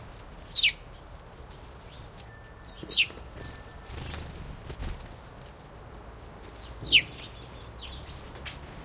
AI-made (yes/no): no